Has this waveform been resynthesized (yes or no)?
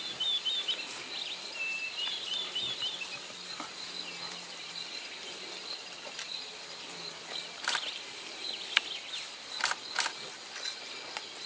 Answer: no